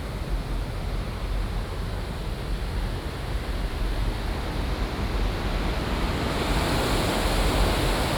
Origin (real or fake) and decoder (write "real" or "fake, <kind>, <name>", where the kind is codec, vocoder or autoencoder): real